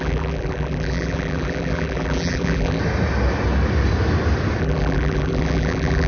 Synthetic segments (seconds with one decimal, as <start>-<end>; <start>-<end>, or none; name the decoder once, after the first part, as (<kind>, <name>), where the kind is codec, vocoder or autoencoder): 0.0-2.8 (vocoder, BigVGAN v2); 4.6-6.1